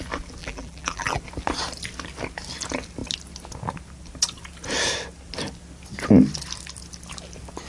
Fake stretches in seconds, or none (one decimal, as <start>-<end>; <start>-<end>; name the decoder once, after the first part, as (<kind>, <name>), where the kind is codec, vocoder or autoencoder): 0.4-1.2 (vocoder, BigVGAN v2)